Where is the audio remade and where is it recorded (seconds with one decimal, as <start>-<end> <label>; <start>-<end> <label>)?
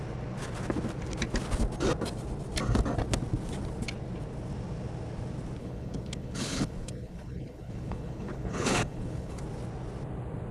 0.0-5.6 recorded; 5.6-9.4 remade; 9.4-10.5 recorded